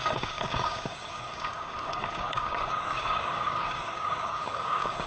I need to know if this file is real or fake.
fake